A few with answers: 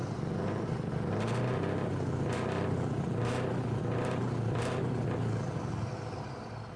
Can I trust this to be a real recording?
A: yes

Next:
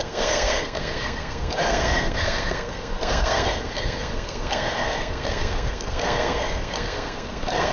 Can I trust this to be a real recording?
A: no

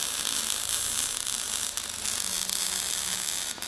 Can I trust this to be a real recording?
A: yes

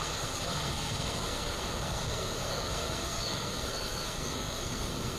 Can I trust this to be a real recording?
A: no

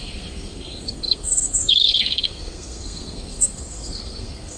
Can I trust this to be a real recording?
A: no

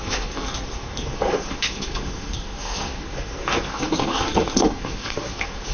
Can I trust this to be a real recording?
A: no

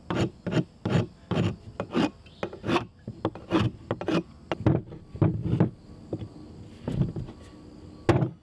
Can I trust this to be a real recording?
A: yes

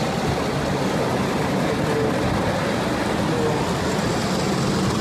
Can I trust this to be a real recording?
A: yes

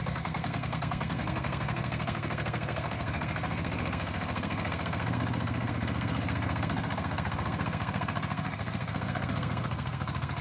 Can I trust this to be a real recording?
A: no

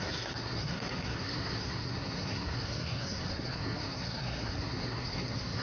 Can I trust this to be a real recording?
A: no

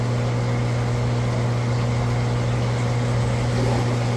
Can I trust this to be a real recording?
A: yes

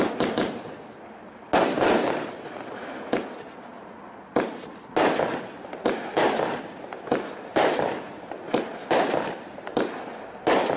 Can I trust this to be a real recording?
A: yes